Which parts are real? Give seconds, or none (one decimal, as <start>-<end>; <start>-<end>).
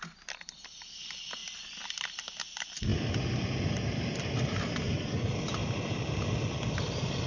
0.0-7.3